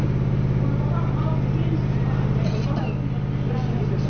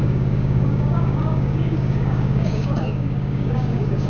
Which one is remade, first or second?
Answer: second